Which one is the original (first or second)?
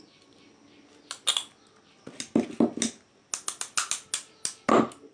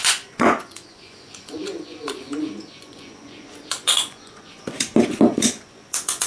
first